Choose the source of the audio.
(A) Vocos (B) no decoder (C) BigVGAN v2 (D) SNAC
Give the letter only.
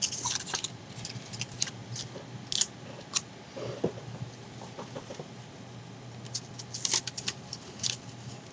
B